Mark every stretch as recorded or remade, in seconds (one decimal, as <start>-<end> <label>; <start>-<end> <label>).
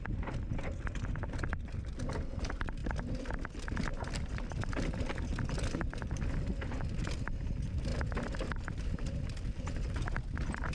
0.0-10.7 recorded